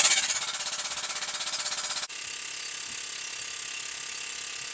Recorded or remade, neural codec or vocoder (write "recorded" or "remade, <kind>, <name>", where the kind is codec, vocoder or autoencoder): recorded